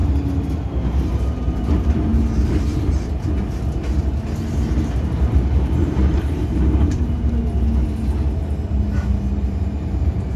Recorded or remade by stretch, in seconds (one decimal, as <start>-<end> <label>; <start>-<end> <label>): 0.0-1.0 recorded; 1.0-2.1 remade; 2.1-5.3 recorded; 5.3-7.4 remade; 7.4-9.4 recorded; 9.4-10.4 remade